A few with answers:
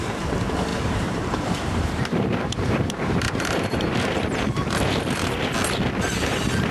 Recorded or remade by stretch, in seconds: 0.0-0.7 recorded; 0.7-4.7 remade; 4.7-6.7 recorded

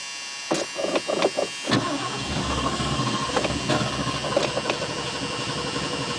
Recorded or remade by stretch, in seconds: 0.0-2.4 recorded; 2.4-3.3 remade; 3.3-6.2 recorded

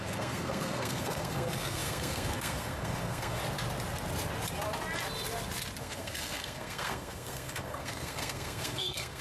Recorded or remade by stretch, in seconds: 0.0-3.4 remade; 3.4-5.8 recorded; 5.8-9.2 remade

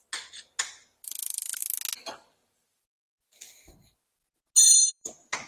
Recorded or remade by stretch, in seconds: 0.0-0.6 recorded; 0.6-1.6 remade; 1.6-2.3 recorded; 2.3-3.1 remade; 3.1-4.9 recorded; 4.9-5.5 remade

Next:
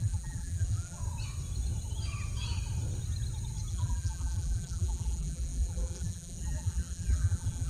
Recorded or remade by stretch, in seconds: 0.0-1.0 remade; 1.0-3.7 recorded; 3.7-7.7 remade

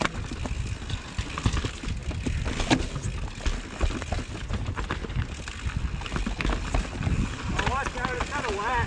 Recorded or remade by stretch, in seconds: 0.0-8.9 recorded

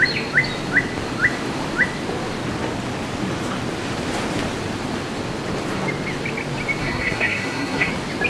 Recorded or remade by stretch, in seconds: 0.0-6.8 recorded; 6.8-7.9 remade; 7.9-8.3 recorded